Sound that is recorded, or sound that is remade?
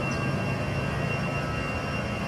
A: recorded